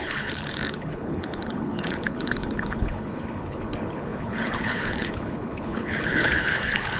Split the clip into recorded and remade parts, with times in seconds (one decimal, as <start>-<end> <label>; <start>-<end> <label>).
0.0-7.0 remade